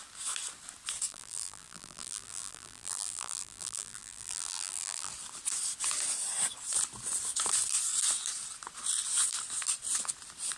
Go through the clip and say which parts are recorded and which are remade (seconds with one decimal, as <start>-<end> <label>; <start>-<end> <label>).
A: 0.0-1.1 recorded; 1.1-5.1 remade; 5.1-10.6 recorded